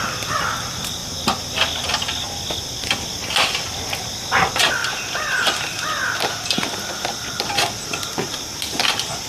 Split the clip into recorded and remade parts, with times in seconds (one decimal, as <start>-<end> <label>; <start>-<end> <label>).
0.0-9.3 recorded